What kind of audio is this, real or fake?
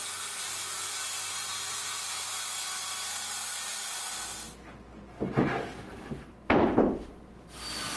real